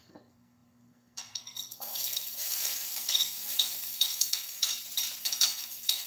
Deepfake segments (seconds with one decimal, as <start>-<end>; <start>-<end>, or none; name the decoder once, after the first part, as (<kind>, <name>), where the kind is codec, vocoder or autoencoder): 0.0-4.7 (codec, SNAC); 5.2-6.1